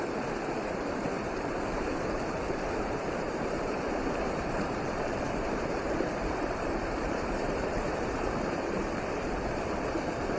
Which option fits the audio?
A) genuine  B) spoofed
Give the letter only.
B